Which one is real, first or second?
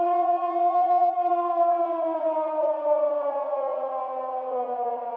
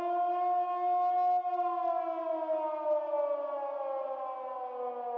second